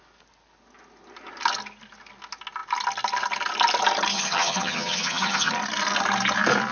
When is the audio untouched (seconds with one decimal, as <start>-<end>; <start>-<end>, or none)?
0.0-4.1; 5.5-6.7